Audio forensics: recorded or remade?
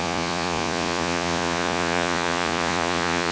remade